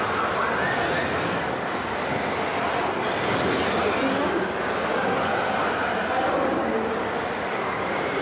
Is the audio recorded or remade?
recorded